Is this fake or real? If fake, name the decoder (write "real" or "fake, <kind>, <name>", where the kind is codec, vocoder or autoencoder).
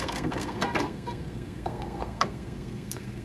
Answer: fake, codec, SNAC